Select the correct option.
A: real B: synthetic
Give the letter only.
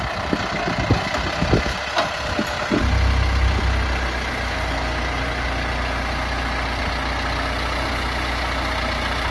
A